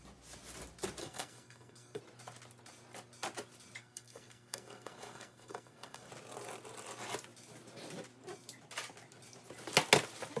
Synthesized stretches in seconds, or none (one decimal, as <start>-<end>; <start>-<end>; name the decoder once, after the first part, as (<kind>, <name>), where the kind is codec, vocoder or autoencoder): 1.0-2.0 (codec, SNAC); 3.8-6.1